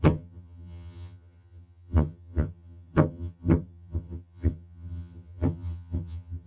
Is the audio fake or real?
fake